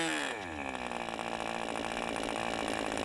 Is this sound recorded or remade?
recorded